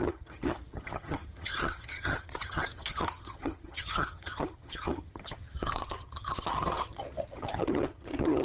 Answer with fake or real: fake